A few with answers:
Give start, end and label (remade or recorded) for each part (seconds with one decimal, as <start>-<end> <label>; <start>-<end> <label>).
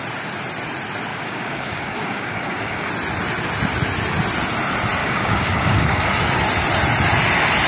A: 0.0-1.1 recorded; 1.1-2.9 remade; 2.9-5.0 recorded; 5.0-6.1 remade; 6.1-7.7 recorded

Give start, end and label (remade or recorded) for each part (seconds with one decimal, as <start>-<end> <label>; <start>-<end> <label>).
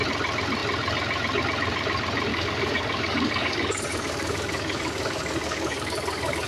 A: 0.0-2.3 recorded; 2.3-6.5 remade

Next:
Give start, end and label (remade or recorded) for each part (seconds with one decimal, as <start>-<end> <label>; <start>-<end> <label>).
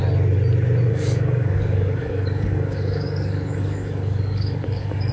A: 0.0-0.9 recorded; 0.9-5.1 remade